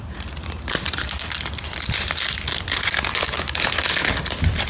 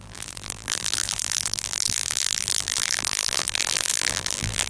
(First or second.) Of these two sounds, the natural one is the first